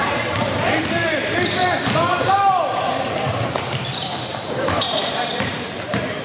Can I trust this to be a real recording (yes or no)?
no